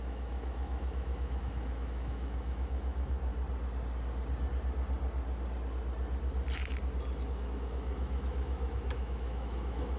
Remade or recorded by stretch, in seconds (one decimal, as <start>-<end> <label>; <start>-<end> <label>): 0.0-3.3 remade; 3.3-7.3 recorded; 7.3-10.0 remade